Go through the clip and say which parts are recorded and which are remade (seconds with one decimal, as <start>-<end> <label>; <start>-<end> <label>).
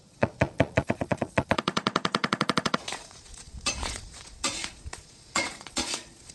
0.0-6.3 remade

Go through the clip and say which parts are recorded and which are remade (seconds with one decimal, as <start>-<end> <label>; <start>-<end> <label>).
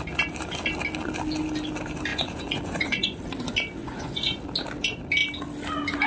0.0-2.1 recorded; 2.1-3.2 remade; 3.2-3.8 recorded; 3.8-4.4 remade; 4.4-6.1 recorded